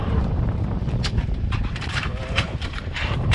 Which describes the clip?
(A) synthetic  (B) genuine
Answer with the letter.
A